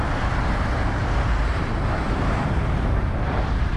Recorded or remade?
remade